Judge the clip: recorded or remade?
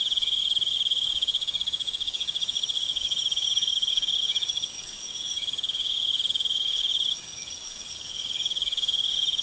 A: remade